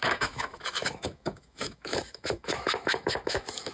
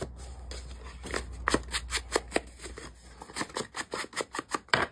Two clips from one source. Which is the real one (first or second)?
second